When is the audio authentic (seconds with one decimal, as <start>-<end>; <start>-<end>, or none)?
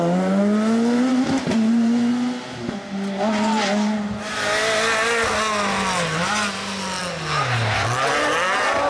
0.0-8.9